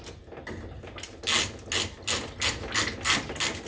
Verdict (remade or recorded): recorded